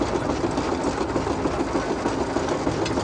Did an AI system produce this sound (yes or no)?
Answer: no